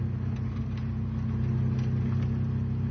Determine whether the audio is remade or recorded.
recorded